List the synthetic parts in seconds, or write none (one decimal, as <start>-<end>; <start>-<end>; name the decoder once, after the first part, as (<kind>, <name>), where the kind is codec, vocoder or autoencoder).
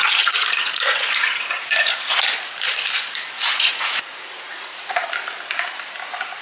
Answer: 0.0-2.9 (vocoder, Vocos); 3.5-5.1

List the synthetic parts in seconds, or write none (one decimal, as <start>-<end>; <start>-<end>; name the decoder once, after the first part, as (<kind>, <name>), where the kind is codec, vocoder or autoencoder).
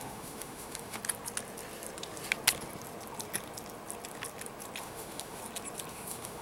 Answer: 0.0-1.0 (autoencoder, DAC-VAE); 4.8-5.4; 5.9-6.4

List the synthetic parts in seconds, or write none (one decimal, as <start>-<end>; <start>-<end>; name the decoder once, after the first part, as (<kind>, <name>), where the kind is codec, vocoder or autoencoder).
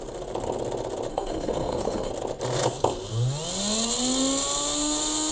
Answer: 1.1-2.1 (codec, SNAC)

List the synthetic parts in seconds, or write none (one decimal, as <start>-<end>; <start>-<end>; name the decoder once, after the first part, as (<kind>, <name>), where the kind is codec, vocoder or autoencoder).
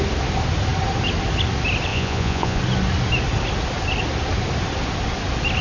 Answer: 1.9-2.6 (vocoder, Vocos)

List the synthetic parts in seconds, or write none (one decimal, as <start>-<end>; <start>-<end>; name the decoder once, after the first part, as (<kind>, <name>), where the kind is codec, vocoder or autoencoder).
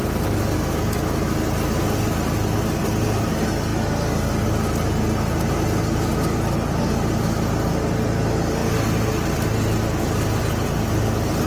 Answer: none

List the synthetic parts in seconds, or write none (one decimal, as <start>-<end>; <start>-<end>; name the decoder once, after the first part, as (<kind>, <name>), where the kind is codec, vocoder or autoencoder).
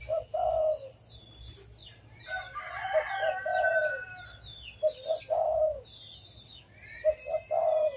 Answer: 1.8-3.1 (vocoder, BigVGAN v2); 3.5-4.1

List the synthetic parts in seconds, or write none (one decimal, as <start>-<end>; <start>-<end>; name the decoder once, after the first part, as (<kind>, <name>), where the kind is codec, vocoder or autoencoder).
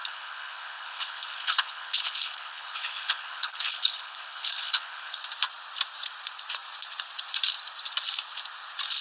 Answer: 0.0-5.2 (codec, HILCodec)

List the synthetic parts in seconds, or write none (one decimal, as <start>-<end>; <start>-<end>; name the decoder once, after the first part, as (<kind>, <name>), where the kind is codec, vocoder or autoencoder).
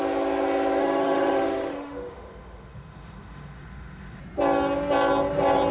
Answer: 0.8-4.2 (autoencoder, DAC-VAE)